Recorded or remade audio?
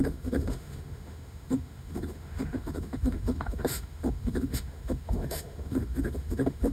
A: remade